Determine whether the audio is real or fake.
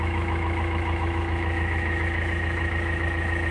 fake